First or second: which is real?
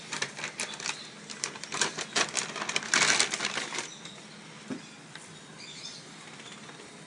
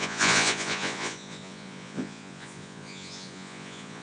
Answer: first